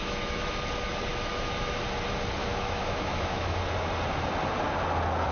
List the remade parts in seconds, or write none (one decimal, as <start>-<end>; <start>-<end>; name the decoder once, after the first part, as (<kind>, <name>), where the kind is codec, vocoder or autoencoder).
0.0-0.6 (autoencoder, DAC-VAE); 1.1-1.8; 2.4-3.6